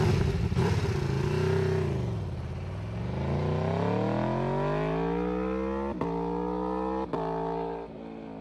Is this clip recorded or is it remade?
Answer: recorded